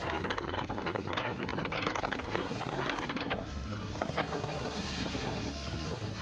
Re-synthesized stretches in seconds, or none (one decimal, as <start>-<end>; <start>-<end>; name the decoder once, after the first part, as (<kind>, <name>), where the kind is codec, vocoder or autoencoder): 0.0-6.2 (codec, SNAC)